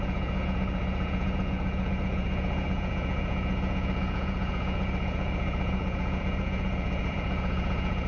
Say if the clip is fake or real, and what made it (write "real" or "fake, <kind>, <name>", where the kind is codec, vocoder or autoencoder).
fake, vocoder, Vocos